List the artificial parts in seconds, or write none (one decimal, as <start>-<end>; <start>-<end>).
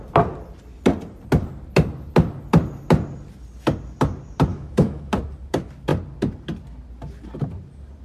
4.5-5.1